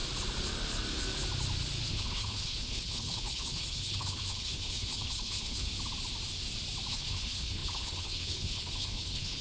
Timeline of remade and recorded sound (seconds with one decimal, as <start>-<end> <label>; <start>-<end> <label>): 0.0-1.9 recorded; 1.9-5.7 remade; 5.7-6.9 recorded; 6.9-9.4 remade